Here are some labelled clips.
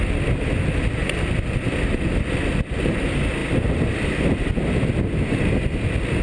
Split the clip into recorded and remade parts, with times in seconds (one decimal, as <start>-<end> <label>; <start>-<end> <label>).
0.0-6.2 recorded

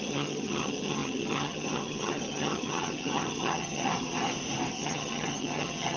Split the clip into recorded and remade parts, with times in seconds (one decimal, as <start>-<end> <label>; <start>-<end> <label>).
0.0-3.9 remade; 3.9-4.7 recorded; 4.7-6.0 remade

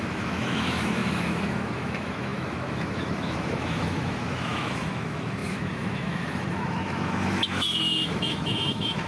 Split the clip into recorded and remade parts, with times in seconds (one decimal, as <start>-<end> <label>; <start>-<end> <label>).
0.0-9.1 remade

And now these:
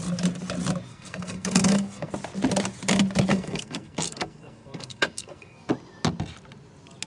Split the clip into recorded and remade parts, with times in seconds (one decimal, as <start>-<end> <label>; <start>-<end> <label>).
0.0-0.9 recorded; 0.9-2.1 remade; 2.1-3.3 recorded; 3.3-5.7 remade; 5.7-7.1 recorded